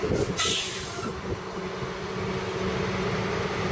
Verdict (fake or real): real